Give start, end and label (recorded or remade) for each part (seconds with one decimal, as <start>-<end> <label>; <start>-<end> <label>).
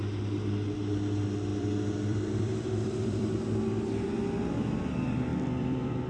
0.0-1.5 recorded; 1.5-3.8 remade; 3.8-5.3 recorded; 5.3-6.1 remade